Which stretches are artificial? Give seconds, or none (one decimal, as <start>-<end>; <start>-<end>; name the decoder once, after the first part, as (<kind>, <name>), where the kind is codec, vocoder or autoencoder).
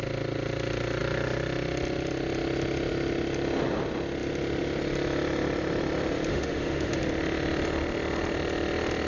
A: 6.3-7.0 (autoencoder, DAC-VAE)